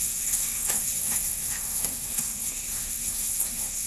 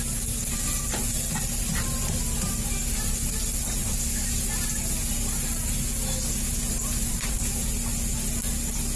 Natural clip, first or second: second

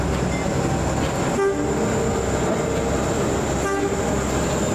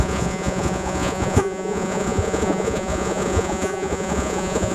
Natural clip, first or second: first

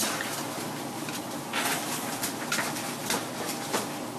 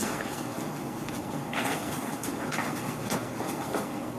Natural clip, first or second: first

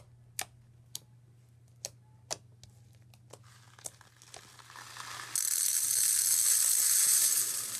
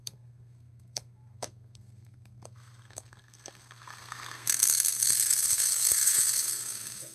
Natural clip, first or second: first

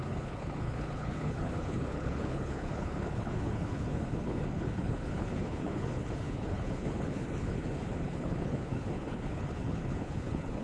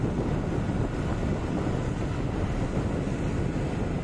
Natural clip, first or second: second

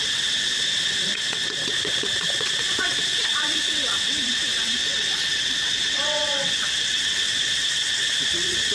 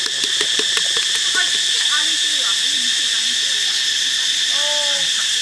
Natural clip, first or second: second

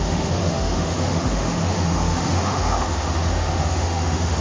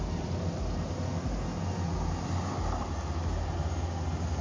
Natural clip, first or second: second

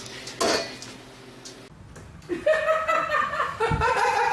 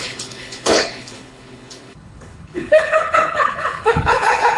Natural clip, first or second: first